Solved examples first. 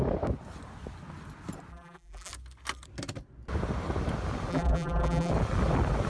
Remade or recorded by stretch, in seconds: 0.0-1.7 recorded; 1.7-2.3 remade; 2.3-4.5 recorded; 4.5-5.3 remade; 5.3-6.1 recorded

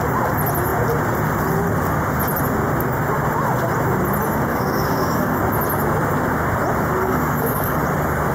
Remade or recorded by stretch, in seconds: 0.0-4.5 recorded; 4.5-5.4 remade; 5.4-7.0 recorded; 7.0-7.8 remade; 7.8-8.3 recorded

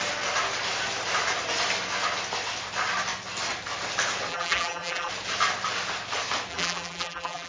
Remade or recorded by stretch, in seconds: 0.0-4.3 recorded; 4.3-5.1 remade; 5.1-6.5 recorded; 6.5-7.5 remade

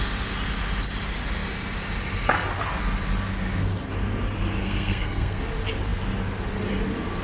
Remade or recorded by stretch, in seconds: 0.0-4.6 recorded; 4.6-5.4 remade; 5.4-7.2 recorded

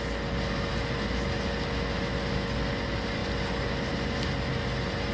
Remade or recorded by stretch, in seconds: 0.0-5.1 recorded

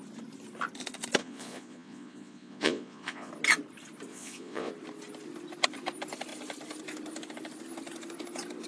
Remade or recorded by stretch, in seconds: 0.0-1.2 recorded; 1.2-3.3 remade; 3.3-4.1 recorded; 4.1-4.7 remade; 4.7-8.7 recorded